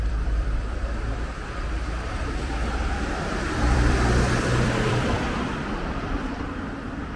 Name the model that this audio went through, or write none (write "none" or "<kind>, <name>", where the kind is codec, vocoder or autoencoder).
vocoder, BigVGAN v2